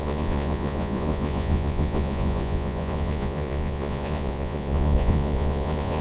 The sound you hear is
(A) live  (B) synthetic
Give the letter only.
B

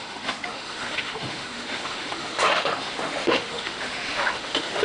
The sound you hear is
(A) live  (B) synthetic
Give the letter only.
B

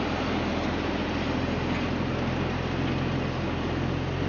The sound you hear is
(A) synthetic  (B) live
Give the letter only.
B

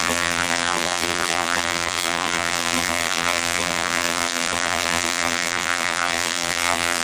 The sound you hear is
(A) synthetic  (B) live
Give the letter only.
A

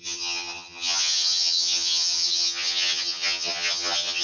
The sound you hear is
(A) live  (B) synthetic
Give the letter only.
B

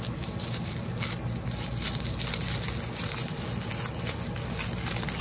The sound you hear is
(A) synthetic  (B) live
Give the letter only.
B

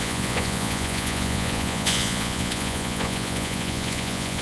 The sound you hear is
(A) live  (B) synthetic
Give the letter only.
B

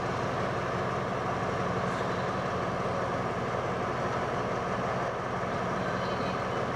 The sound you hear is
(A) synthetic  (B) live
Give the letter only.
B